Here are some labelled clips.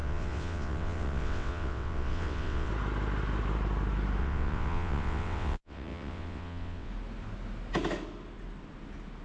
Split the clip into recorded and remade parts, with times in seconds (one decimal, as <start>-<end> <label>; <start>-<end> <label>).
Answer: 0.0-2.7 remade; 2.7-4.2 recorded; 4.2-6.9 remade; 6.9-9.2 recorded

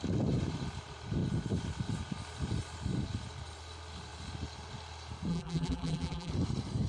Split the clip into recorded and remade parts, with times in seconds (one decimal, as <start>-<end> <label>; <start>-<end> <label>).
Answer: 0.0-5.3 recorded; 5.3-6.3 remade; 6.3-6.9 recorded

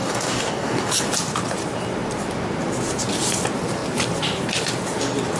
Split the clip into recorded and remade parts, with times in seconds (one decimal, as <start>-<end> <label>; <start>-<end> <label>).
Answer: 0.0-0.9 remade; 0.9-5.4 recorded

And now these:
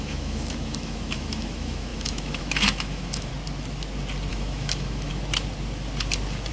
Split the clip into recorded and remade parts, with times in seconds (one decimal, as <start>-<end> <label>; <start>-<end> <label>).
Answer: 0.0-3.3 remade; 3.3-4.3 recorded; 4.3-5.1 remade; 5.1-6.5 recorded

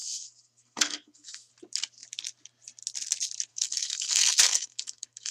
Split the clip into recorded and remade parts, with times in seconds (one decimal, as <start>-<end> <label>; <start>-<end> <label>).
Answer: 0.0-1.5 remade; 1.5-3.5 recorded; 3.5-5.3 remade

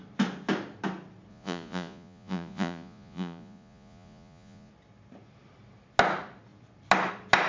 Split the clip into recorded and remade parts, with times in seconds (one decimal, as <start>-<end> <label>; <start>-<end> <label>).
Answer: 0.0-1.3 recorded; 1.3-4.7 remade; 4.7-7.5 recorded

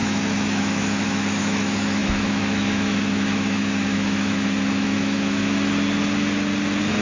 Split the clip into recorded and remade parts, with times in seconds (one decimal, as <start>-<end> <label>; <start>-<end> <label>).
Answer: 0.0-5.4 remade; 5.4-7.0 recorded